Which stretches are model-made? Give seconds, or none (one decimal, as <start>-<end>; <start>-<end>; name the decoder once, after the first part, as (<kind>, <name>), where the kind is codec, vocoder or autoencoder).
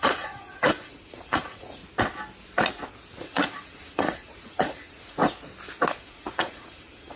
0.0-1.8 (vocoder, Vocos); 3.2-5.2; 6.0-7.2